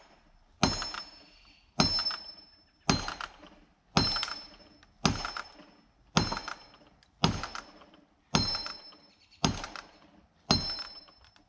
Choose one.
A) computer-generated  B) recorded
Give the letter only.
B